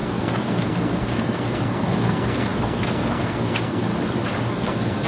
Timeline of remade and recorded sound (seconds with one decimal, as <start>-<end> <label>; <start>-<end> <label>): 0.0-3.9 remade; 3.9-4.5 recorded; 4.5-5.1 remade